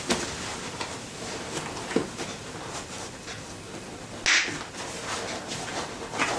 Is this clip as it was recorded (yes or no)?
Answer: yes